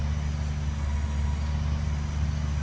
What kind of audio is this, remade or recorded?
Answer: recorded